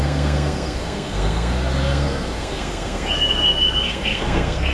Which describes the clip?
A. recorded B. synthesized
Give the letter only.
B